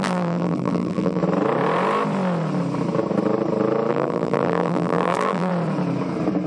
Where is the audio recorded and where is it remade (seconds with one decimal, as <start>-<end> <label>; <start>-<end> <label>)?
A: 0.0-1.2 remade; 1.2-3.9 recorded; 3.9-5.5 remade; 5.5-6.5 recorded